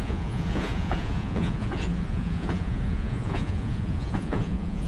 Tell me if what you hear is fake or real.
fake